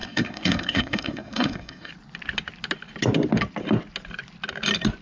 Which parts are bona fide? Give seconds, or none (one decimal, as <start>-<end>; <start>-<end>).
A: 1.9-5.0